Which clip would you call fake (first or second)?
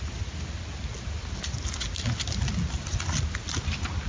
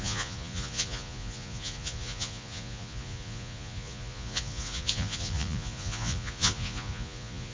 second